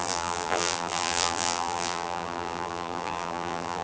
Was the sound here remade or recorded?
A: remade